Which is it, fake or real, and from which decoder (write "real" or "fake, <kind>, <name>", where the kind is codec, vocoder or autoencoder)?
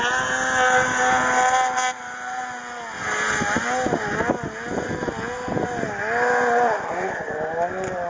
real